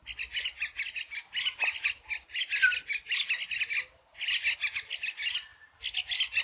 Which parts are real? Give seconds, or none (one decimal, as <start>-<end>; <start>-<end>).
0.0-6.4